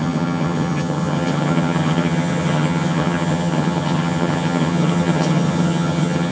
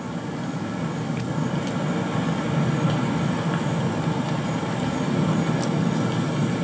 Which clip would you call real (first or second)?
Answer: second